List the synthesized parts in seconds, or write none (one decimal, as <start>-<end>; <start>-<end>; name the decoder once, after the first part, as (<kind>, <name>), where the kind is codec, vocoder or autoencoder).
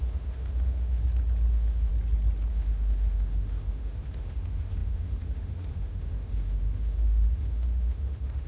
0.0-1.0 (autoencoder, DAC-VAE); 1.5-1.9; 2.5-8.5